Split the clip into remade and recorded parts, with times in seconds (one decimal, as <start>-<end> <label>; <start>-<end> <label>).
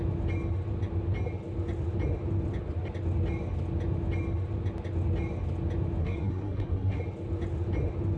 0.0-6.0 recorded; 6.0-7.0 remade; 7.0-8.2 recorded